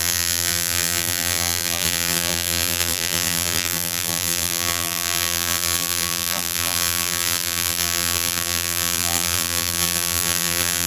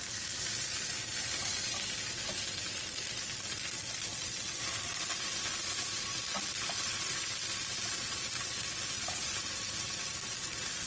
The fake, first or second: first